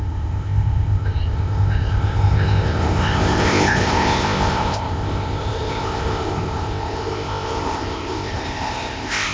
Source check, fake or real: fake